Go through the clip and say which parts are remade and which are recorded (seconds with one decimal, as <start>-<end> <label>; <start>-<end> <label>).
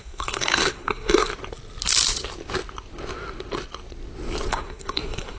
0.0-1.3 remade; 1.3-4.5 recorded; 4.5-5.4 remade